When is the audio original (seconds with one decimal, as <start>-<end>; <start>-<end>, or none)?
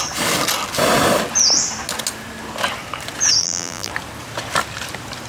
0.0-3.4; 3.9-5.3